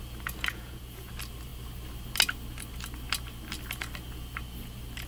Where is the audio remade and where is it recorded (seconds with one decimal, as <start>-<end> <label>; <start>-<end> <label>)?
0.0-0.5 recorded; 0.5-1.1 remade; 1.1-5.1 recorded